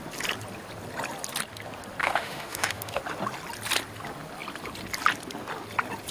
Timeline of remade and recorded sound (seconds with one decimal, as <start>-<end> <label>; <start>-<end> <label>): 0.0-2.0 recorded; 2.0-3.0 remade; 3.0-6.1 recorded